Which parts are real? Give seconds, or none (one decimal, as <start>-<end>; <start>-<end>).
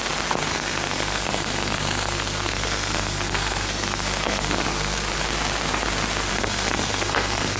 0.0-0.5; 5.1-6.3